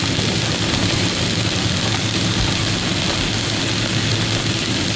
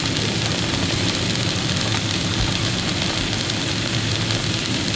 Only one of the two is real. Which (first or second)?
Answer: first